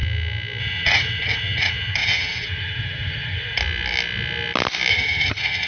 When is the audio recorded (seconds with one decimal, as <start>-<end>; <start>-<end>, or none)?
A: 0.0-0.6; 3.6-4.9